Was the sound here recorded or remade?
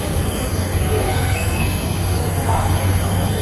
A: remade